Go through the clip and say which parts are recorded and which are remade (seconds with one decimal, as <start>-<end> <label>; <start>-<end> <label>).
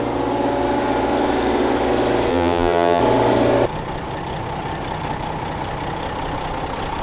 0.0-2.3 recorded; 2.3-3.0 remade; 3.0-7.0 recorded